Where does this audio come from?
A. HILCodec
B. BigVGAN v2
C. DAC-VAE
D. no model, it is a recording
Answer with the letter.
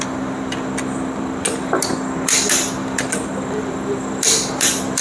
D